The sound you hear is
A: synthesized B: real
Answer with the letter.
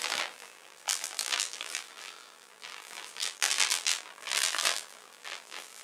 A